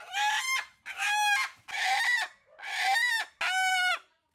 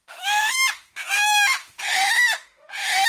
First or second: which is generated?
second